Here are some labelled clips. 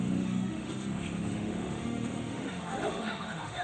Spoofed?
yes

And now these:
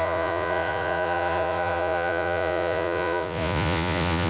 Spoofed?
yes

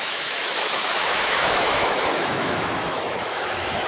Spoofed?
yes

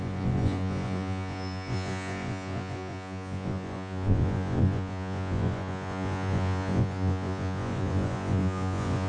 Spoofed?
yes